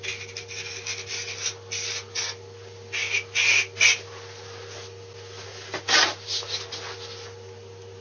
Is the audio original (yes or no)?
yes